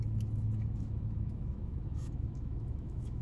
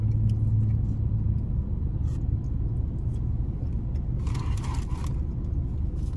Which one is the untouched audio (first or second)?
second